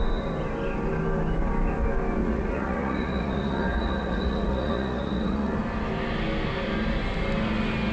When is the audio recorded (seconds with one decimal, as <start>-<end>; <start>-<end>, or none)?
0.0-2.2; 5.6-7.9